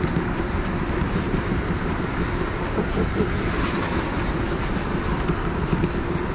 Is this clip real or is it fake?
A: real